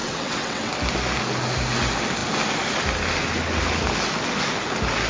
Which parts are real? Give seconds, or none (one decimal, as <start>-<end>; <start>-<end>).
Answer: 0.7-5.1